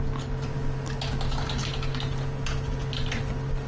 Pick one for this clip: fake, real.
real